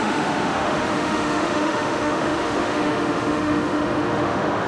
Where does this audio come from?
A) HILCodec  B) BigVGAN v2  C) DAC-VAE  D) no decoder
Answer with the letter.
C